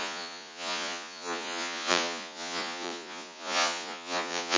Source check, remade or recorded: remade